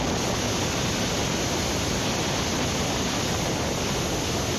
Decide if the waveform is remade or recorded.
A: recorded